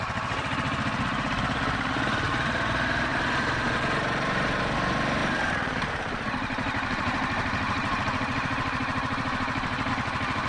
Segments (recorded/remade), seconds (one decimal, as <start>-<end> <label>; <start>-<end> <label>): 0.0-3.1 recorded; 3.1-4.6 remade; 4.6-5.2 recorded; 5.2-9.9 remade; 9.9-10.5 recorded